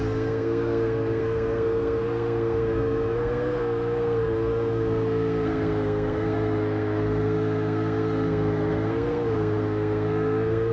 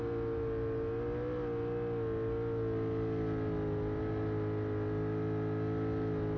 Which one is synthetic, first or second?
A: first